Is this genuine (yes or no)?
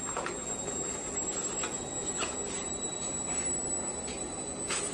yes